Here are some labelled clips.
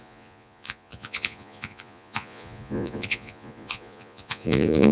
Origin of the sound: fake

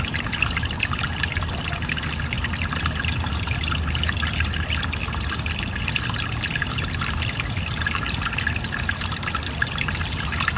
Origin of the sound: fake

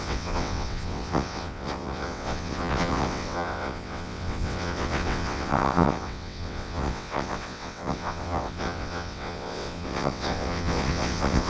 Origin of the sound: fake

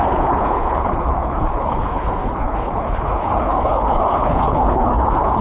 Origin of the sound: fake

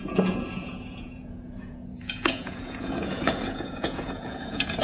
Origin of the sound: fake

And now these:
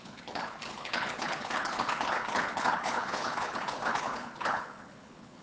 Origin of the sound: fake